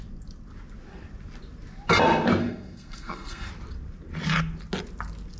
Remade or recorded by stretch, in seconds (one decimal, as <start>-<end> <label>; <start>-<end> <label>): 0.0-2.4 recorded; 2.4-3.5 remade; 3.5-5.4 recorded